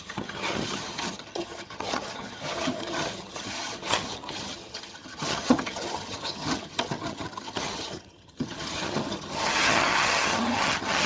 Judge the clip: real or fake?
fake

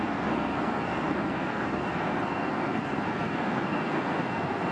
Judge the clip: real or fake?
fake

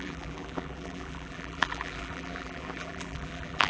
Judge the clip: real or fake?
fake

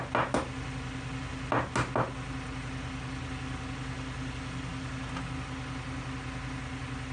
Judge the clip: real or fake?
real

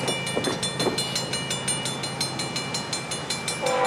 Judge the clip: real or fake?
real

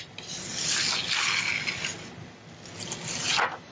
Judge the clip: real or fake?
real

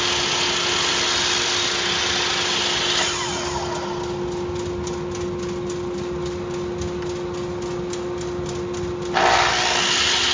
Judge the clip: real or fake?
real